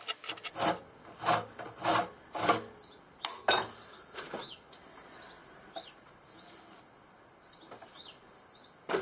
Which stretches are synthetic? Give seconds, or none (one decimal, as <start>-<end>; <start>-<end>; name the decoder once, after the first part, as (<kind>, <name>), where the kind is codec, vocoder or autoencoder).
5.4-6.1 (vocoder, BigVGAN v2)